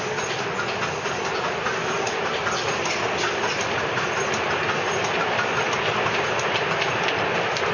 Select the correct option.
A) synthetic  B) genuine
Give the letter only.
B